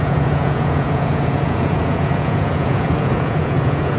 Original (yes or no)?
no